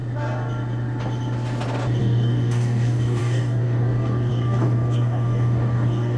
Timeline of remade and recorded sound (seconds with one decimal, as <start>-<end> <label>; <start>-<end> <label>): 0.0-2.0 recorded; 2.0-6.2 remade

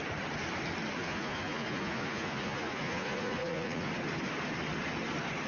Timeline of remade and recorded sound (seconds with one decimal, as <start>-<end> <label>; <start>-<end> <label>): 0.0-1.0 recorded; 1.0-3.9 remade; 3.9-5.5 recorded

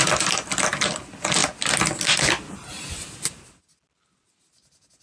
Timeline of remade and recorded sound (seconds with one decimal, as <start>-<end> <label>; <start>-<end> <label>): 0.0-5.0 recorded

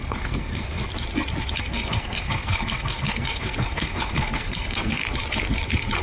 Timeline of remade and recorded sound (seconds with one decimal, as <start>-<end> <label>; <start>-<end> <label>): 0.0-0.8 remade; 0.8-1.6 recorded; 1.6-5.0 remade; 5.0-6.0 recorded

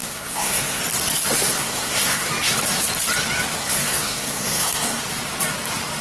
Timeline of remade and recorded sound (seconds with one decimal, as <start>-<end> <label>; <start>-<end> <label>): 0.0-0.8 remade; 0.8-1.6 recorded; 1.6-2.3 remade; 2.3-3.6 recorded; 3.6-5.0 remade; 5.0-6.0 recorded

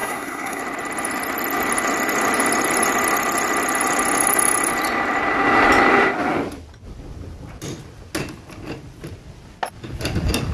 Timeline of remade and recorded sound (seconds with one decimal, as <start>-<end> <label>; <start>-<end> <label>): 0.0-0.6 remade; 0.6-10.5 recorded